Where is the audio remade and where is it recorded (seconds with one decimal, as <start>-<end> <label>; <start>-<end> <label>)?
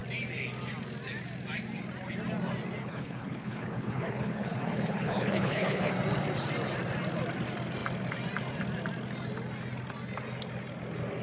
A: 0.0-2.8 recorded; 2.8-5.9 remade; 5.9-11.2 recorded